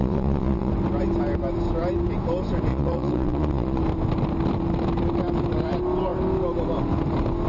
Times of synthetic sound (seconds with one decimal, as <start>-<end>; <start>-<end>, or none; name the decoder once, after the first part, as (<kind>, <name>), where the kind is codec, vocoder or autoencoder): 0.0-0.7 (vocoder, Vocos); 2.7-3.8